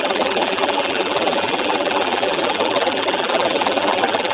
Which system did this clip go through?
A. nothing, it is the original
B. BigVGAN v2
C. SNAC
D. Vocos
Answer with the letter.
B